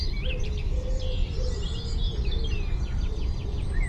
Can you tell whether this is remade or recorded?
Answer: recorded